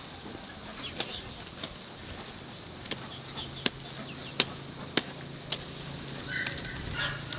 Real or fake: real